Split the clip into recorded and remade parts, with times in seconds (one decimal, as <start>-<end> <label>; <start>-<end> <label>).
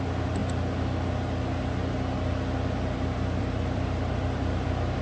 0.0-0.4 remade; 0.4-3.4 recorded; 3.4-5.0 remade